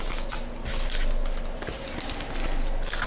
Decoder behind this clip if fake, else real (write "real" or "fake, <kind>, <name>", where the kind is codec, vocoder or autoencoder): real